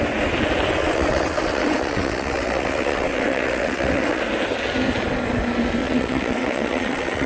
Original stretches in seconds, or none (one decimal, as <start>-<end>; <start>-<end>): 0.0-0.8; 4.2-5.8